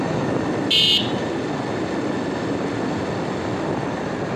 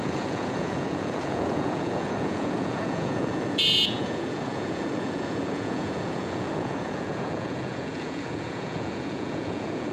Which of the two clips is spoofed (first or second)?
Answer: second